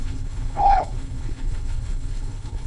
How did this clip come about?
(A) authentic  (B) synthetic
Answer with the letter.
B